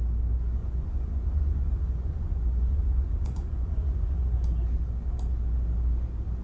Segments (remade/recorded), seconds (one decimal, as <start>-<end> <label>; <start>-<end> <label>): 0.0-0.6 recorded; 0.6-4.4 remade; 4.4-6.4 recorded